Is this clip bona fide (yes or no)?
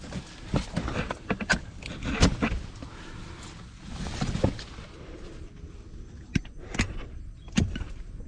yes